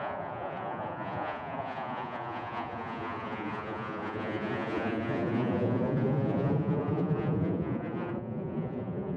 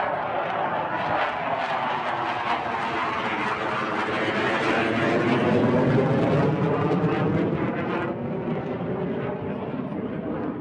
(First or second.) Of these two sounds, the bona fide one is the second